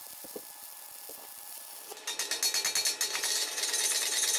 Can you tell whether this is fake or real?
real